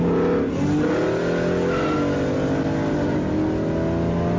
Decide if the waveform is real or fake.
real